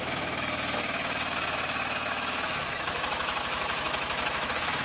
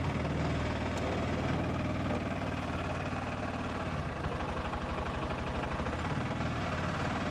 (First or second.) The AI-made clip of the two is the first